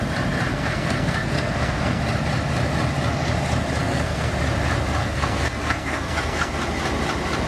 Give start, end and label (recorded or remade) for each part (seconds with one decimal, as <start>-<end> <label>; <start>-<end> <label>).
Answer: 0.0-0.5 recorded; 0.5-2.0 remade; 2.0-3.8 recorded; 3.8-4.3 remade; 4.3-5.0 recorded; 5.0-6.5 remade; 6.5-7.5 recorded